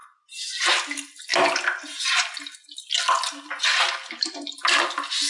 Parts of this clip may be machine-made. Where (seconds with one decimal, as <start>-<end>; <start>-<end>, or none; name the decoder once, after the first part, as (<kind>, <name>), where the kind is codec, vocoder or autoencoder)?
none